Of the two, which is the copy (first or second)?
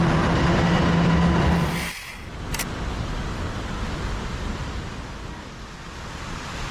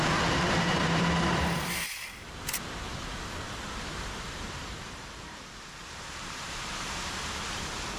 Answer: second